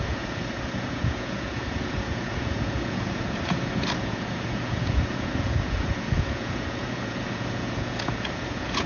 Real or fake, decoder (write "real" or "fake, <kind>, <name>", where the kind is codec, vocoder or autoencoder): fake, vocoder, Vocos